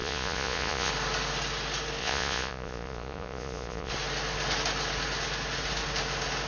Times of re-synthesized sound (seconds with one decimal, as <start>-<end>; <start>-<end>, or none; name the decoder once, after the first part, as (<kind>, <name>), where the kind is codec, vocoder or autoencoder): 0.0-0.9 (vocoder, Vocos); 2.0-3.9